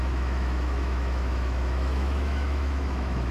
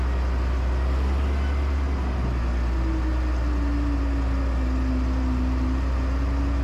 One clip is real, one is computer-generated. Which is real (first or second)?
second